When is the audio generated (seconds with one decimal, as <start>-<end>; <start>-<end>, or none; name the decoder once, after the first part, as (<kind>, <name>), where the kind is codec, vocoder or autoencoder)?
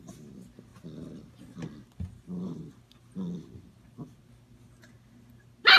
none